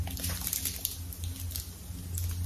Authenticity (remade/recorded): recorded